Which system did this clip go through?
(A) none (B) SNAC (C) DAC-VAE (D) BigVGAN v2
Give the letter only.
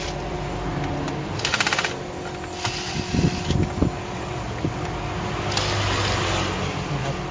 A